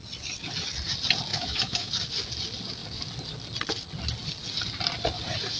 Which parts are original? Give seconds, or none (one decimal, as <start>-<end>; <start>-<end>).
0.0-1.3; 1.9-5.6